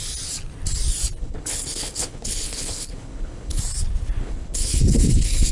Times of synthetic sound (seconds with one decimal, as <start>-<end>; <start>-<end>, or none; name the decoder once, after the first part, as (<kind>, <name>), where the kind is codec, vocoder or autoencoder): 1.2-3.6 (codec, HILCodec); 4.2-5.5